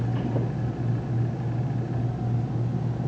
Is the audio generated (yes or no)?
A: no